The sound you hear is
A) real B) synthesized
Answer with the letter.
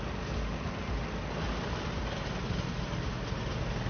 A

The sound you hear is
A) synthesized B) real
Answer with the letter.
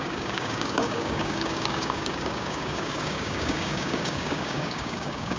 A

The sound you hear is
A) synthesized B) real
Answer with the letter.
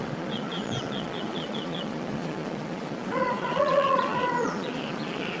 A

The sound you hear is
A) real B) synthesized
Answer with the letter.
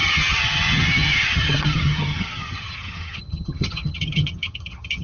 B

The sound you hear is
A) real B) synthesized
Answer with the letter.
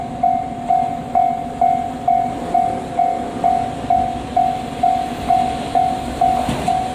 A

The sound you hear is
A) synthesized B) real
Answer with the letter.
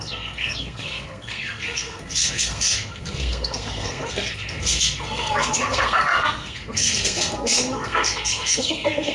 A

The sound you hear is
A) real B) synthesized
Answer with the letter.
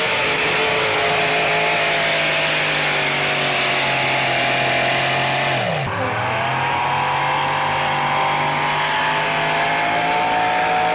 A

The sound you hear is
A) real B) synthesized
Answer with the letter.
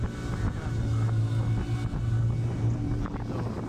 A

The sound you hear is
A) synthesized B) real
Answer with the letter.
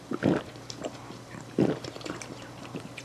A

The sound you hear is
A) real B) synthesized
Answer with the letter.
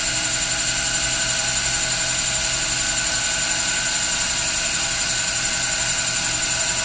A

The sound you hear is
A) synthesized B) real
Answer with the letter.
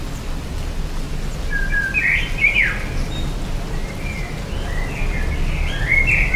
B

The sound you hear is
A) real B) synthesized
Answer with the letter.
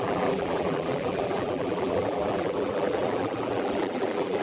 B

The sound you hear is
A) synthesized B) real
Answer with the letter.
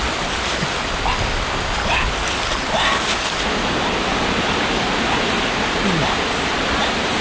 B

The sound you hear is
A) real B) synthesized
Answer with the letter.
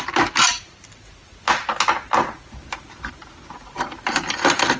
A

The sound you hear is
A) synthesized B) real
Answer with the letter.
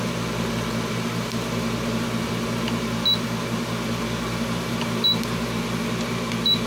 B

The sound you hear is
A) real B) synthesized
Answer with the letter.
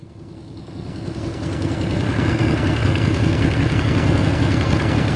B